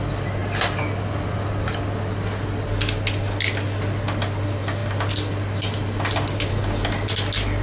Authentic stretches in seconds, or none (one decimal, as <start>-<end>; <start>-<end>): 0.0-7.6